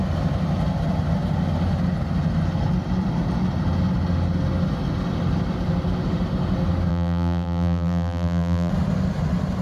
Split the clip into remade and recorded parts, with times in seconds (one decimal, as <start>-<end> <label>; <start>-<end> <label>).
0.0-6.9 recorded; 6.9-8.7 remade; 8.7-9.6 recorded